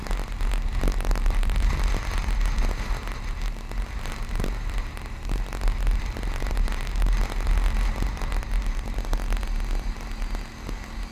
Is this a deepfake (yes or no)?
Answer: no